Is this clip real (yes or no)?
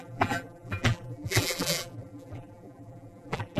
no